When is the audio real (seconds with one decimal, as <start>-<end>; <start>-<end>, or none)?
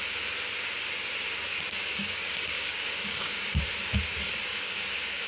0.0-1.5; 3.6-4.5